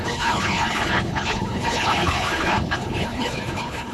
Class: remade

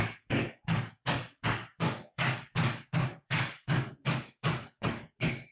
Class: remade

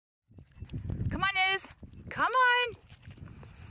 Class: recorded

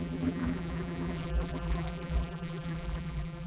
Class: remade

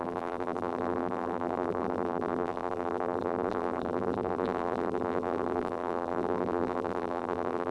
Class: remade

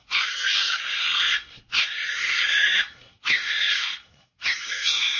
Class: remade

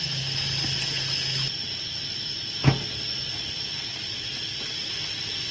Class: recorded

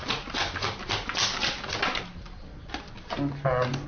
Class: recorded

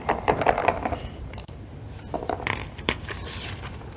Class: remade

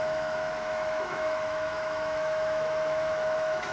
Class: remade